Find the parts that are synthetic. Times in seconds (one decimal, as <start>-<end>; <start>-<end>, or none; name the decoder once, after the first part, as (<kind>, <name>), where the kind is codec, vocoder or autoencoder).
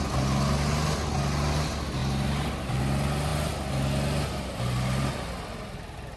2.0-2.8 (vocoder, BigVGAN v2)